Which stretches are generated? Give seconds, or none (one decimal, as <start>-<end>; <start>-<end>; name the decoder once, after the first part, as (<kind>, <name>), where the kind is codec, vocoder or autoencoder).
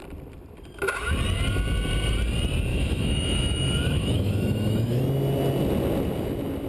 2.7-5.0 (autoencoder, DAC-VAE)